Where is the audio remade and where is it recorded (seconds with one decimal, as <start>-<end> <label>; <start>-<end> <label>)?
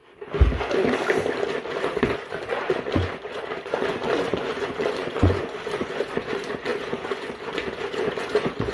0.0-1.7 recorded; 1.7-8.7 remade